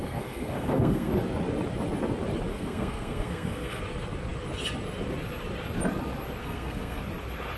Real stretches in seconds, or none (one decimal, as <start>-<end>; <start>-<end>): 1.1-2.5; 3.8-6.4; 7.0-7.6